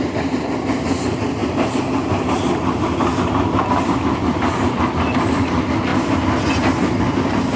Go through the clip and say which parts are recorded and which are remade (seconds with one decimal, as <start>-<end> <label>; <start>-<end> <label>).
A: 0.0-7.6 recorded